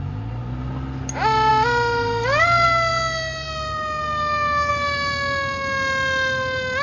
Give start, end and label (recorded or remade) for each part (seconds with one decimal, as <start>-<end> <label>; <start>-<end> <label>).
0.0-6.8 recorded